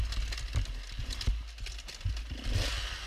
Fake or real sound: real